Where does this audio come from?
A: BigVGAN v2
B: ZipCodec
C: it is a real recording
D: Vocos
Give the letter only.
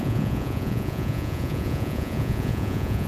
D